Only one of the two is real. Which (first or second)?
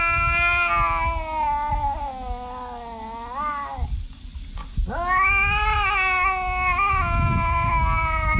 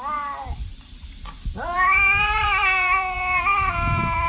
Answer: first